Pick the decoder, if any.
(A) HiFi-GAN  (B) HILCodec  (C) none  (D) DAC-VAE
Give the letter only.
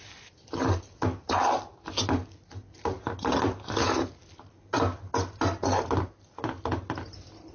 C